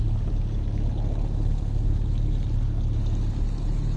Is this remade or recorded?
recorded